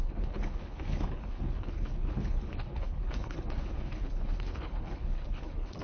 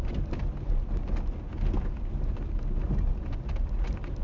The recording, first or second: second